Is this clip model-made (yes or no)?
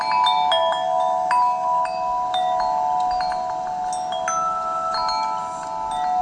no